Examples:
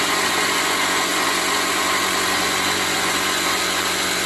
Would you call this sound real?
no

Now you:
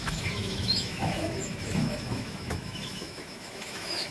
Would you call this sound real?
no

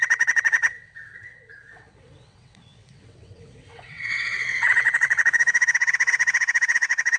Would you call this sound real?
no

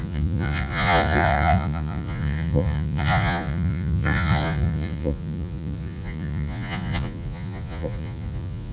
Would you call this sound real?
no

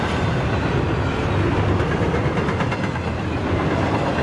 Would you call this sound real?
yes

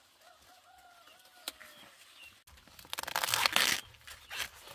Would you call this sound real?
yes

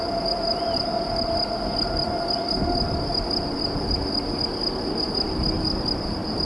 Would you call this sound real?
yes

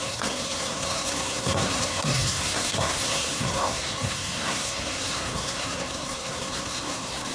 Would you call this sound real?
no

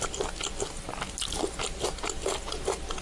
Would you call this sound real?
yes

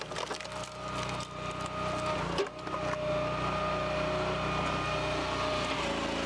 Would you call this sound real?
yes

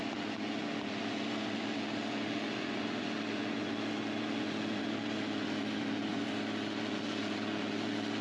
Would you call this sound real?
no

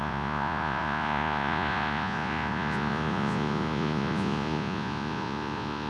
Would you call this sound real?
no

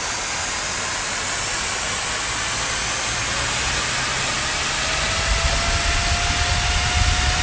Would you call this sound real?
yes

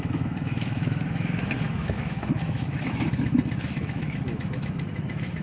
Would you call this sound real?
no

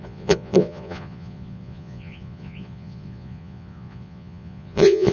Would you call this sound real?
no